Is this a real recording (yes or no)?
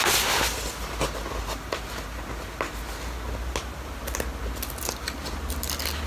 yes